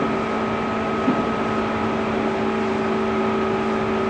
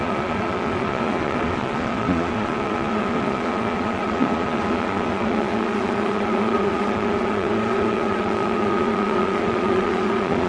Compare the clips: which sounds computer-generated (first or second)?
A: second